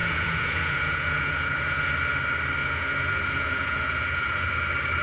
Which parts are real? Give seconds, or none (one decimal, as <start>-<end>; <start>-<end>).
1.9-2.6; 4.5-5.0